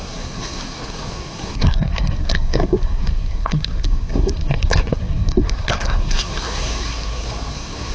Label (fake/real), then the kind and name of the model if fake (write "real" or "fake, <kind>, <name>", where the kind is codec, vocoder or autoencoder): fake, codec, SNAC